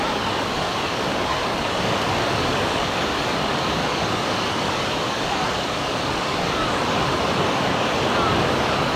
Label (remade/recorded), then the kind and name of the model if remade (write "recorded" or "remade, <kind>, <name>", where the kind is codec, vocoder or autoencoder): remade, codec, DAC